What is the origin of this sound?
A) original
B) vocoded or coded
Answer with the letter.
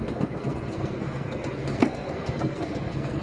B